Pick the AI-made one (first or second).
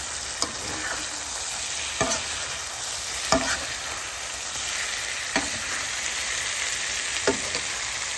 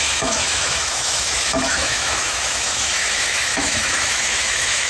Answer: second